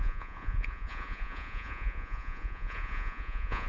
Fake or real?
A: fake